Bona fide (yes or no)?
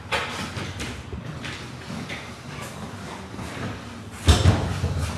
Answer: yes